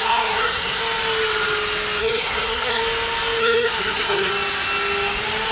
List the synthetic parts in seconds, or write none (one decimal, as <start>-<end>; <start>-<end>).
0.0-0.8; 2.0-2.8; 3.4-4.3